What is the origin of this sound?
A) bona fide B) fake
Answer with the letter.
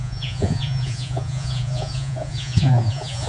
B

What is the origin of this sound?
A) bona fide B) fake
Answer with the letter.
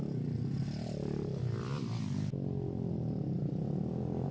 A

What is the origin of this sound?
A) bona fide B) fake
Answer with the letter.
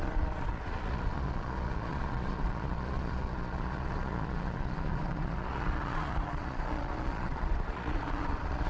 B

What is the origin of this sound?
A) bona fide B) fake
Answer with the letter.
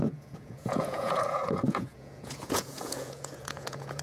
B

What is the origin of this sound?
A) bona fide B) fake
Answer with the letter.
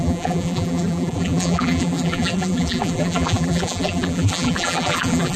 B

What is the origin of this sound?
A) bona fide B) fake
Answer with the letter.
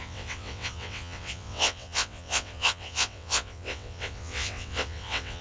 B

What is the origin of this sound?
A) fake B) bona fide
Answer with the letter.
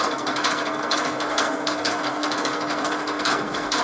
A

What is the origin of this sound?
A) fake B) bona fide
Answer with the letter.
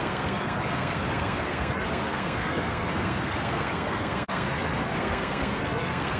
A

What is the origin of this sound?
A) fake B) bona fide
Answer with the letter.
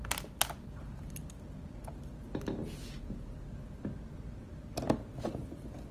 B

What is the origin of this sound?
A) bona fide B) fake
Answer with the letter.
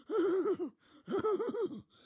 B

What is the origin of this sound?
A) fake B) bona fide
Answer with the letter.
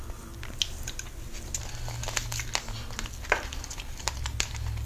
B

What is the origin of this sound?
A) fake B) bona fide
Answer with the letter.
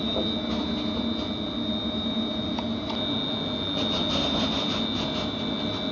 B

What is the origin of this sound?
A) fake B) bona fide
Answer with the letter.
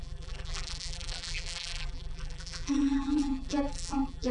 A